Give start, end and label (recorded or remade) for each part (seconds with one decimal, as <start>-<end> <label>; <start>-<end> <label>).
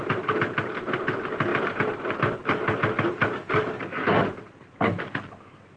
0.0-5.8 recorded